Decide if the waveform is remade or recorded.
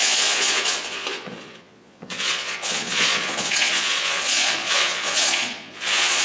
remade